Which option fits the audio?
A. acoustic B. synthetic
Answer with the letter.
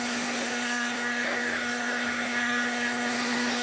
B